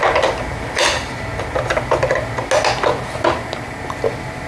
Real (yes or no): yes